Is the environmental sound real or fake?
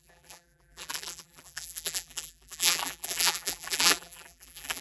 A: fake